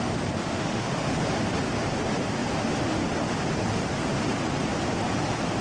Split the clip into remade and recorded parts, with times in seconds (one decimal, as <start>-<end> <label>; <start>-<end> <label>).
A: 0.0-0.4 recorded; 0.4-1.2 remade; 1.2-5.6 recorded